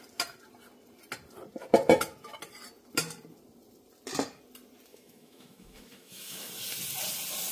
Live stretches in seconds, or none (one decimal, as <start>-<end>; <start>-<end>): 0.0-4.9; 6.5-7.5